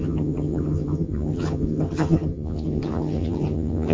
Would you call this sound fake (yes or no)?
yes